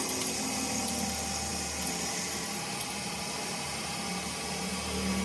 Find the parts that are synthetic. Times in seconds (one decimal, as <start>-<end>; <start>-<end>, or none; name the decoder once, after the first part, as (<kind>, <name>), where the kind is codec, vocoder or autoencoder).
none